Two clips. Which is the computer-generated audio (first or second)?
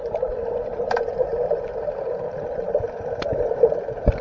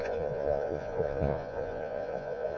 second